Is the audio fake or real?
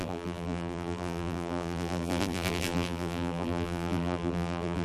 fake